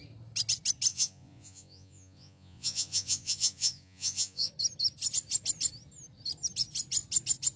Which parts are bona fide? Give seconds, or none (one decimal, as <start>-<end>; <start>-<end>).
0.0-0.9; 4.5-7.6